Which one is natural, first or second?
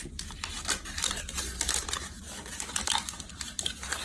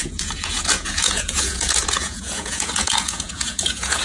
first